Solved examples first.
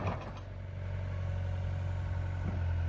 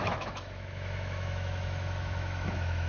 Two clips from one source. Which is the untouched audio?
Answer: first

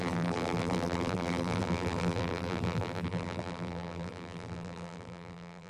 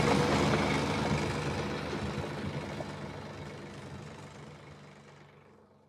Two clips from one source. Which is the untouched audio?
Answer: second